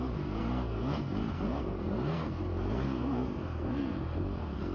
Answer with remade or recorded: remade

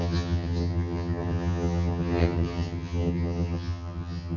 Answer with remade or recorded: remade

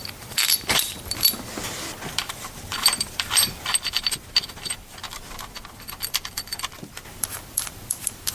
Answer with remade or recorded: remade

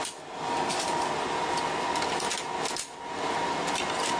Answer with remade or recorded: recorded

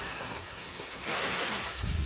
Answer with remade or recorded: remade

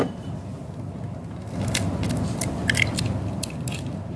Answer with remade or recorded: recorded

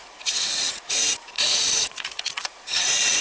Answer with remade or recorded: remade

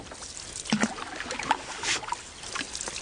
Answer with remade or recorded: recorded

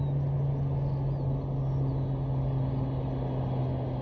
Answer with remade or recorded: recorded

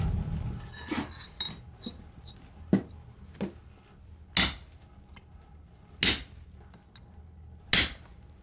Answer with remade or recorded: recorded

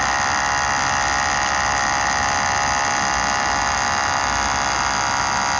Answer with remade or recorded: recorded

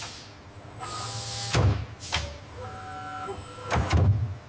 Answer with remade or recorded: recorded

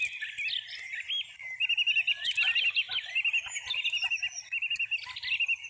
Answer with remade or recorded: recorded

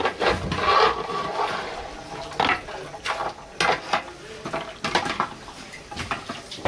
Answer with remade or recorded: recorded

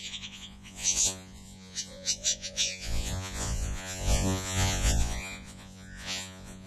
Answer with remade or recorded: remade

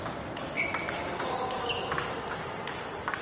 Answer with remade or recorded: recorded